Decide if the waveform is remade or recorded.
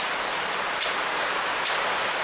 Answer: recorded